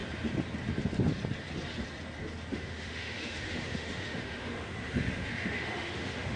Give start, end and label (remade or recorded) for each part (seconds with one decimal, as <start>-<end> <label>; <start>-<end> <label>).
0.0-2.5 recorded; 2.5-6.4 remade

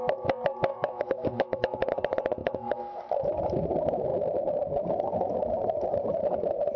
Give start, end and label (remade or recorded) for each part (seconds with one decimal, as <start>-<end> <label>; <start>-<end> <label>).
0.0-0.7 recorded; 0.7-1.9 remade; 1.9-2.4 recorded; 2.4-3.0 remade; 3.0-6.8 recorded